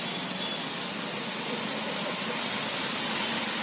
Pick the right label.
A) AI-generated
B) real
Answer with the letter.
B